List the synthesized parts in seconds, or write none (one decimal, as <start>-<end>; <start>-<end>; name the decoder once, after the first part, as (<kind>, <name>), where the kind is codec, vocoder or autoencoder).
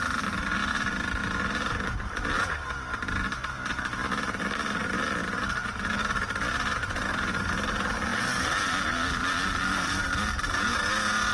none